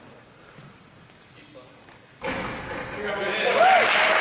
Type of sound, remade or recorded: recorded